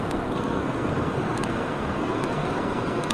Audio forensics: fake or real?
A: fake